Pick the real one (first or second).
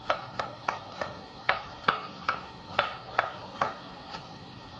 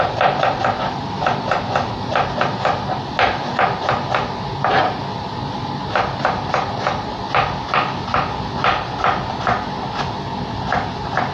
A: second